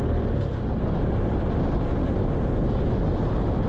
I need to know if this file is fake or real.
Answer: real